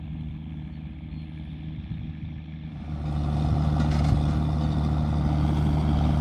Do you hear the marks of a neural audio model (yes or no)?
no